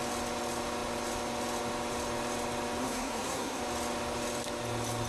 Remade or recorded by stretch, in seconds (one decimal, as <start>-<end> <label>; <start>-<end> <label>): 0.0-2.8 recorded; 2.8-3.6 remade; 3.6-5.1 recorded